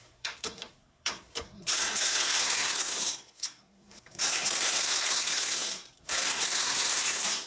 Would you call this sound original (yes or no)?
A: no